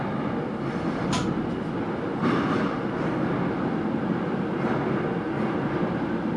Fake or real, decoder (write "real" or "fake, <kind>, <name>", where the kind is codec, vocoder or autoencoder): real